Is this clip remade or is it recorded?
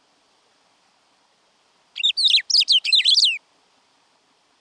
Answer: recorded